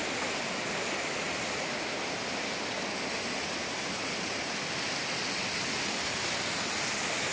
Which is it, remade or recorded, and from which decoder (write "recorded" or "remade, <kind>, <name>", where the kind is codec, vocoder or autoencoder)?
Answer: recorded